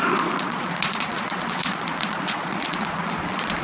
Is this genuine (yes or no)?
no